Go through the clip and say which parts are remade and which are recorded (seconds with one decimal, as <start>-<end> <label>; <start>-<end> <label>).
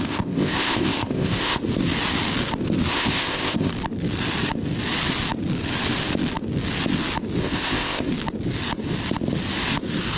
0.0-1.6 remade; 1.6-2.9 recorded; 2.9-3.7 remade; 3.7-7.4 recorded; 7.4-8.1 remade; 8.1-10.2 recorded